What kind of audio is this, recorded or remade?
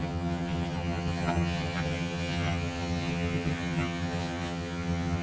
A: remade